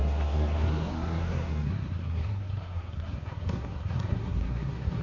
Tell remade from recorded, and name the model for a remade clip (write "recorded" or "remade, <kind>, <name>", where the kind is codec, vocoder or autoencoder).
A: remade, codec, SNAC